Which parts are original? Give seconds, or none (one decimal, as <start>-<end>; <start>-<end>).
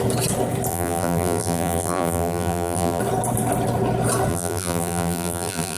0.0-0.7; 3.0-4.3